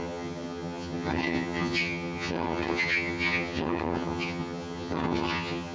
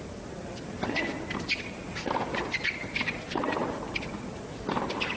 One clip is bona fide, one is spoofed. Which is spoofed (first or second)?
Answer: first